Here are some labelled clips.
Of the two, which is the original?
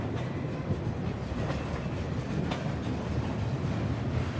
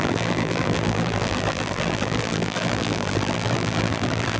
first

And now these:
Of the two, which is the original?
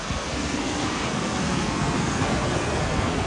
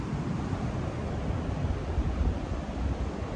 second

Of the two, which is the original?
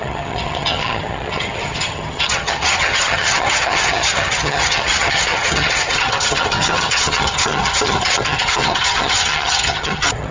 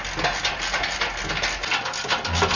second